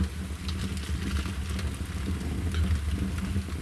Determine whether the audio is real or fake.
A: real